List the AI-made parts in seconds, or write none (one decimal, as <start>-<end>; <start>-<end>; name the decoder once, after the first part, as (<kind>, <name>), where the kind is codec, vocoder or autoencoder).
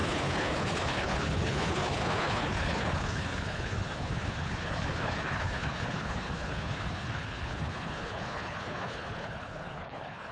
0.0-10.3 (codec, HILCodec)